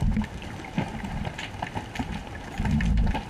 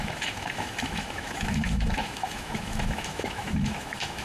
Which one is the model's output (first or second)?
second